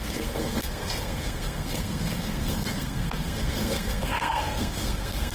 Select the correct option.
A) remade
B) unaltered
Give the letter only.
A